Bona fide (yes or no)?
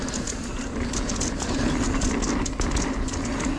yes